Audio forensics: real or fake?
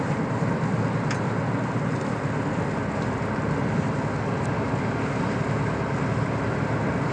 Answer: real